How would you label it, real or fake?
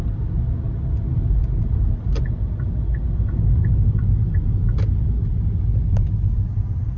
real